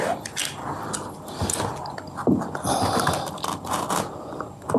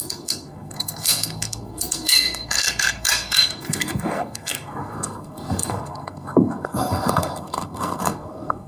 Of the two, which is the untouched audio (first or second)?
first